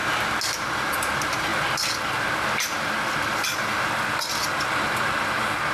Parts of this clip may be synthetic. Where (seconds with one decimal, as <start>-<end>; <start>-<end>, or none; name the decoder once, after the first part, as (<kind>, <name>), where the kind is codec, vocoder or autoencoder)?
none